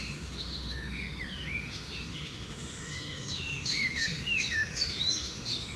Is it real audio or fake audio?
fake